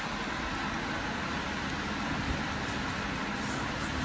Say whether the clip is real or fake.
real